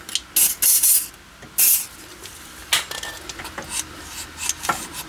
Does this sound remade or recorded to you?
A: recorded